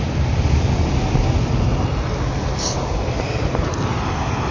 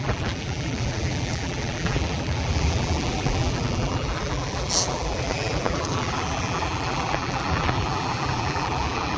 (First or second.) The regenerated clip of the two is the second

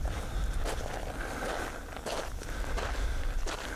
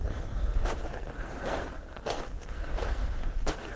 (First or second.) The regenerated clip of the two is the second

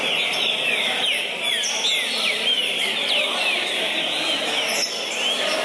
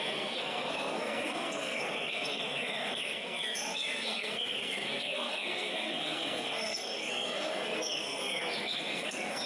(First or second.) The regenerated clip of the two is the second